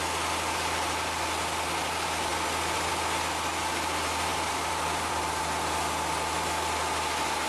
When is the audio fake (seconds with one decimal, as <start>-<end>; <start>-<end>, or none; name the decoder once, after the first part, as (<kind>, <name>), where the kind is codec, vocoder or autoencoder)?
2.3-2.9 (vocoder, BigVGAN v2); 4.3-5.4